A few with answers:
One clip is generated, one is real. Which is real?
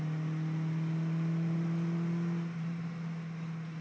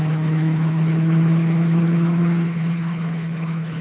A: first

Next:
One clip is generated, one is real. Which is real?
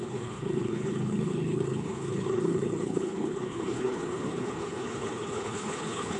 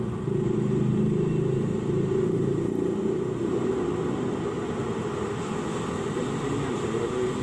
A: second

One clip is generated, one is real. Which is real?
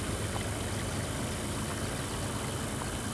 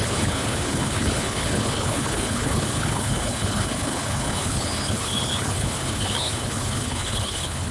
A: first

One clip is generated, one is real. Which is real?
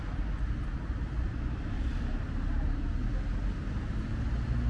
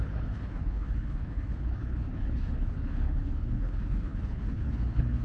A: first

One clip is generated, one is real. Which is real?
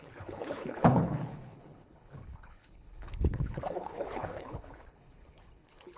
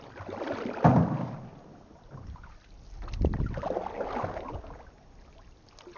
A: second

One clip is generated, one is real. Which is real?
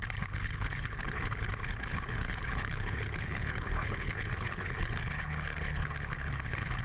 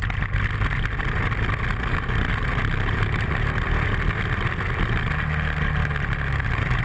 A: second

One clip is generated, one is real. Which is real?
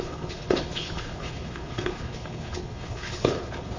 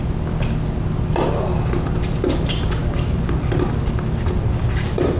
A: second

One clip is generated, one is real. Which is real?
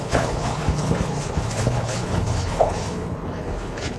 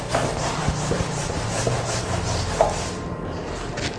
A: second